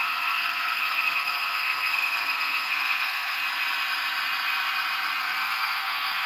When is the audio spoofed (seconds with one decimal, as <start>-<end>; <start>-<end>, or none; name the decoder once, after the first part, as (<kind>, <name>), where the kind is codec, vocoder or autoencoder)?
0.0-3.4 (codec, SNAC); 5.2-6.3